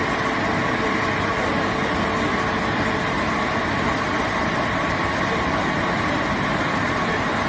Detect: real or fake real